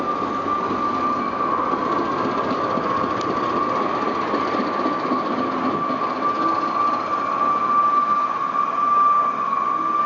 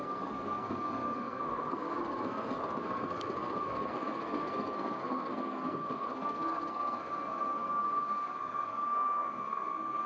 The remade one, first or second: second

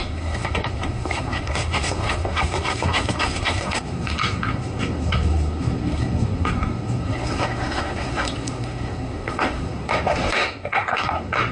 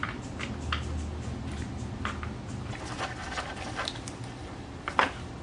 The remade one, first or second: first